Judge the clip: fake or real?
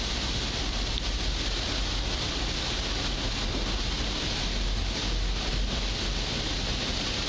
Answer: real